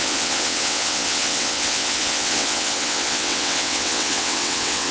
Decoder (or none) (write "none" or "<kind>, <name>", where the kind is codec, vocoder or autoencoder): vocoder, WaveNeXt